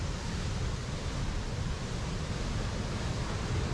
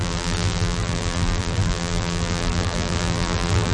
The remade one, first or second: second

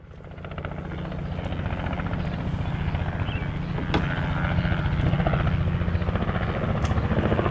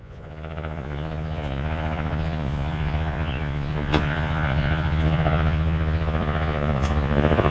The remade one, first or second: second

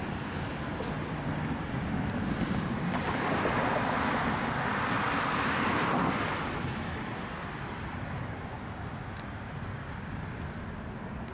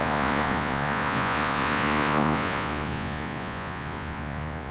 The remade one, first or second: second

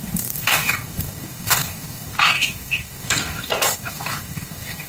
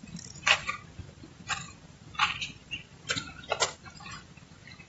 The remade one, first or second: first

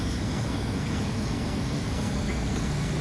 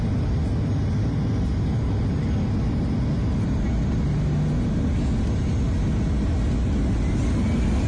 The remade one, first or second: first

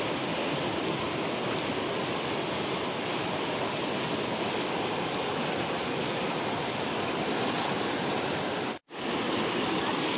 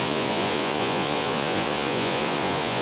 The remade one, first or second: second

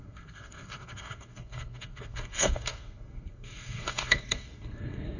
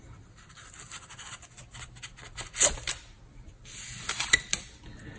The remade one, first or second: first